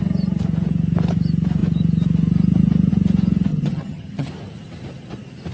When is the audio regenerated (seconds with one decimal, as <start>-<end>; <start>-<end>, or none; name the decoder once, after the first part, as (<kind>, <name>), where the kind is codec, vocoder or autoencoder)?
3.5-4.3 (vocoder, HiFi-GAN)